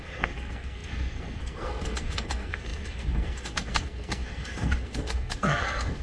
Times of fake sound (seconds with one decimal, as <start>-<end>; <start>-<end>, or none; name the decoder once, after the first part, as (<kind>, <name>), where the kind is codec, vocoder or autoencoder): 0.0-6.0 (codec, SNAC)